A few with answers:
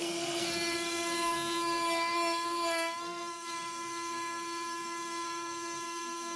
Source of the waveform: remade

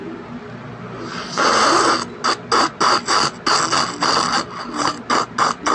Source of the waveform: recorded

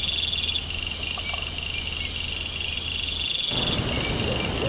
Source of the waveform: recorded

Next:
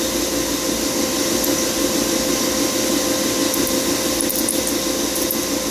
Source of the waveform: recorded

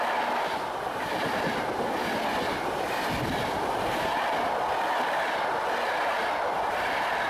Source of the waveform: recorded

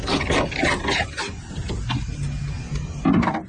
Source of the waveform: recorded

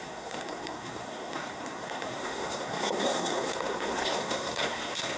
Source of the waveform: remade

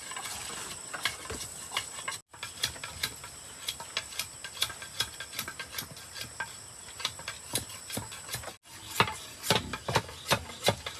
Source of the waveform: recorded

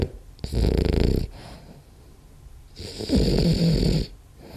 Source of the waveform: recorded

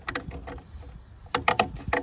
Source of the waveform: recorded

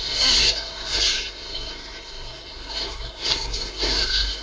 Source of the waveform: remade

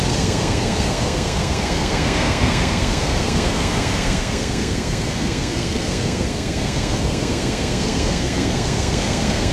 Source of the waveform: remade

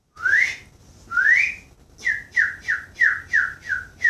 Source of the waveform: recorded